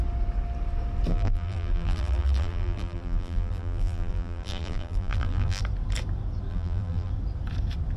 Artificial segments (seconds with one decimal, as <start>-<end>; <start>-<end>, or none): 1.1-5.6; 6.5-7.1